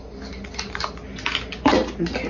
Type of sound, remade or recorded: recorded